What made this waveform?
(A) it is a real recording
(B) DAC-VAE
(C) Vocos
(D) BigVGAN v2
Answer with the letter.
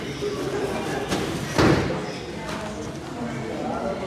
A